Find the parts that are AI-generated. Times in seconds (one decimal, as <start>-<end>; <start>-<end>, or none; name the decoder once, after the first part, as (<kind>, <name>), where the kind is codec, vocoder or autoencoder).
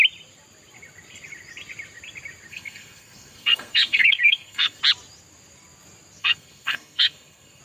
2.5-4.8 (codec, SNAC); 6.2-7.6